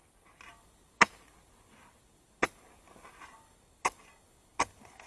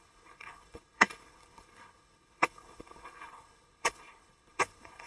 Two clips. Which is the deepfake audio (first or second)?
second